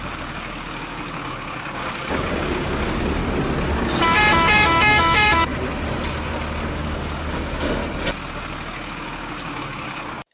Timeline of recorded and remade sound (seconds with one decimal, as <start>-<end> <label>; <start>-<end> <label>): 0.0-3.2 remade; 3.2-3.8 recorded; 3.8-5.5 remade; 5.5-6.7 recorded; 6.7-7.8 remade; 7.8-8.3 recorded; 8.3-10.3 remade